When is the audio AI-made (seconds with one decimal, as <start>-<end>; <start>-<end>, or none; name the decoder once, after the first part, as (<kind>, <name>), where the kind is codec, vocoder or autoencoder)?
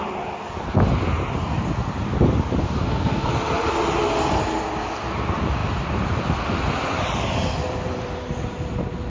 2.6-3.3 (codec, DAC)